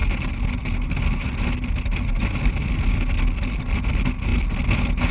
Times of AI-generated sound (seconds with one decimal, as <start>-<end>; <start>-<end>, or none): none

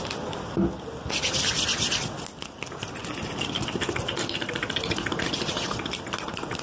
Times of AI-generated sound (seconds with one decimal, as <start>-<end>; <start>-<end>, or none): none

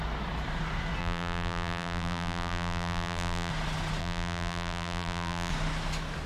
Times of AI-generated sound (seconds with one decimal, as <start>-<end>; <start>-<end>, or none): 1.0-3.5; 4.0-5.5

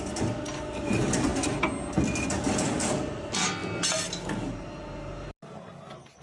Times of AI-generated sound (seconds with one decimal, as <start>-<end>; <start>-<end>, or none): none

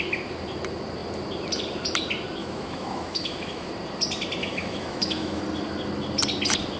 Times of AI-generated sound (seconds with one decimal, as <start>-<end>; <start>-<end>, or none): 2.4-3.7; 4.4-5.4

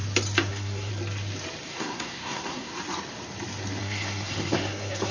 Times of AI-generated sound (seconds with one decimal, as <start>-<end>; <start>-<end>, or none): 0.5-0.9; 1.7-2.7; 3.8-5.1